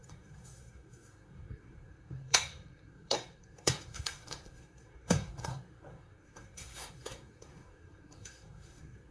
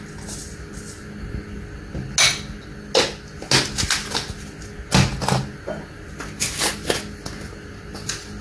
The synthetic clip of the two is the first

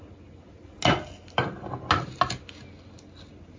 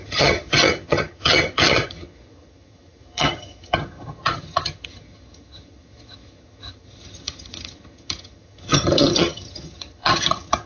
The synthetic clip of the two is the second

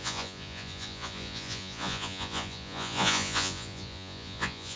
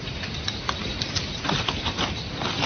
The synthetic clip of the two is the first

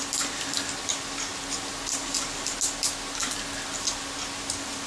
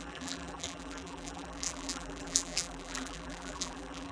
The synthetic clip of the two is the second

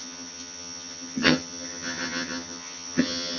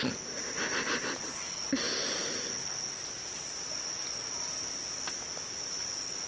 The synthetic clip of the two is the first